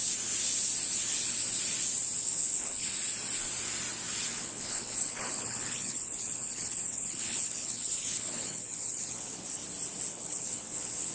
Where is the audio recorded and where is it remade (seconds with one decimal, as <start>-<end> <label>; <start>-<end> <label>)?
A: 0.0-2.2 recorded; 2.2-2.9 remade; 2.9-4.3 recorded; 4.3-9.6 remade; 9.6-10.1 recorded; 10.1-11.1 remade